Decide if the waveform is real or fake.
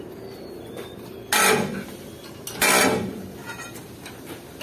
real